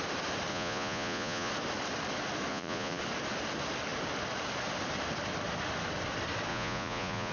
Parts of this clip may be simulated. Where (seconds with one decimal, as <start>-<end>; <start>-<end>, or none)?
0.5-1.5; 2.5-3.0; 6.5-7.3